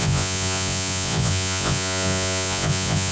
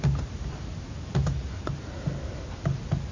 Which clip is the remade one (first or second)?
first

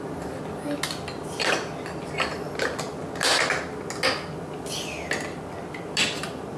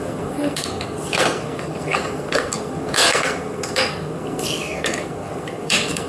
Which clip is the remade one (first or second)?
second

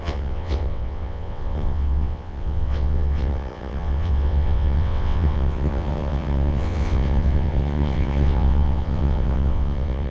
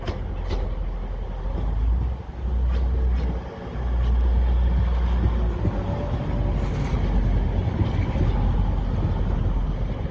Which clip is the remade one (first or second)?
first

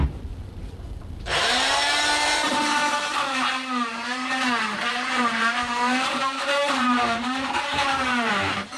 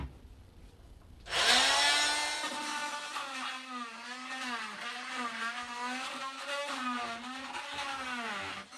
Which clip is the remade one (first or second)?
first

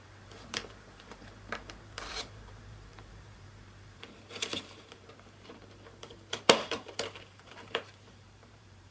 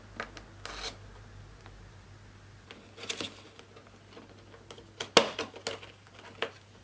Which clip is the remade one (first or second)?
first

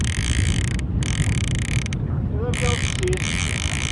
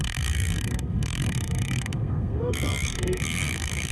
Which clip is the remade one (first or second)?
second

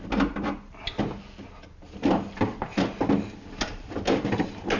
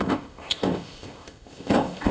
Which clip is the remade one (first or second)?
second